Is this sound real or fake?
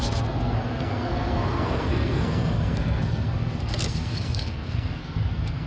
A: fake